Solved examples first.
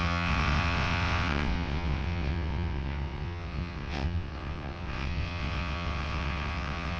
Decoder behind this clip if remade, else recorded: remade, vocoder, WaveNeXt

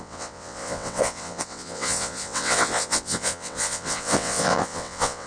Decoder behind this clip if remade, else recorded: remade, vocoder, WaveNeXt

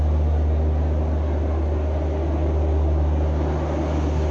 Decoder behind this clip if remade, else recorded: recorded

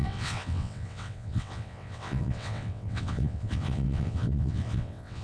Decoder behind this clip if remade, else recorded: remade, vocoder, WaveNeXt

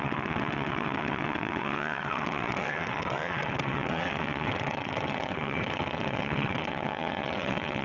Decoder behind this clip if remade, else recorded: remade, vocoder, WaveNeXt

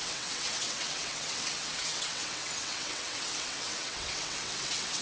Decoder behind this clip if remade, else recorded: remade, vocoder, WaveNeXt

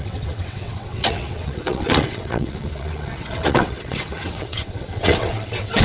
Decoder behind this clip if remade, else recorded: remade, vocoder, WaveNeXt